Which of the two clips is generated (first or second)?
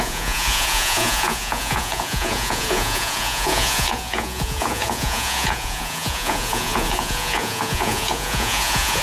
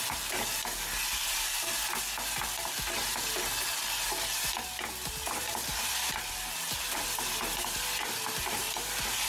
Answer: first